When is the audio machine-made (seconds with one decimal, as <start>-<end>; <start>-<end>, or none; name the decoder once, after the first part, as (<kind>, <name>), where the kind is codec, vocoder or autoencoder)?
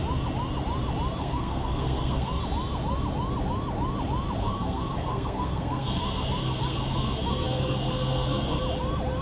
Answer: 1.2-2.4 (codec, SNAC); 4.4-8.6